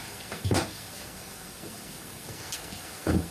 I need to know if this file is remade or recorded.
remade